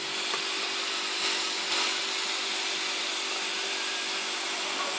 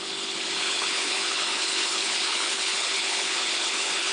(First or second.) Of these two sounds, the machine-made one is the second